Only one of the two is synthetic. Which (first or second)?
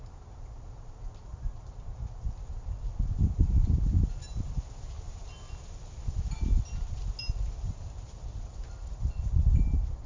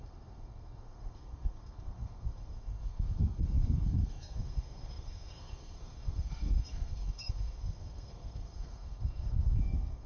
second